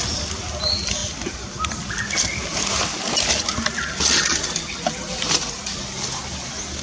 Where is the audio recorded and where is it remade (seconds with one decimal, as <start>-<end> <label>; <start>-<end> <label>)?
0.0-6.8 recorded